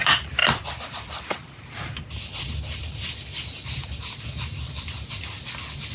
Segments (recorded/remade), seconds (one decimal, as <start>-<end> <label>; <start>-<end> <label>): 0.0-0.4 recorded; 0.4-1.2 remade; 1.2-5.9 recorded